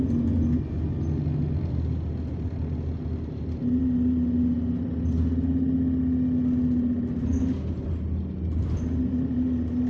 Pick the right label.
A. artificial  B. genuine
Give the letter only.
B